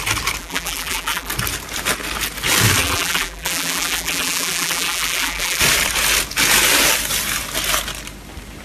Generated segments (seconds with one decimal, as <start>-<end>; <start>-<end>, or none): 0.4-1.3; 2.8-5.6